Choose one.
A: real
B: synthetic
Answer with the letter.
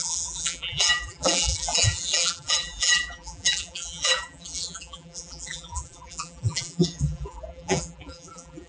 B